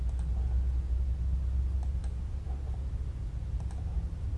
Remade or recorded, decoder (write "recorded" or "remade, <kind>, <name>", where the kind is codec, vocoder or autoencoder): recorded